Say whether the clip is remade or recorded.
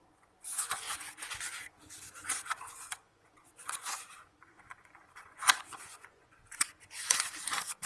remade